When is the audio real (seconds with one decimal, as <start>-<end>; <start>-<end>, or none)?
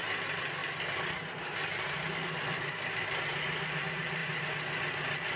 0.0-5.4